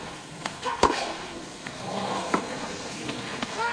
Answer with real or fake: fake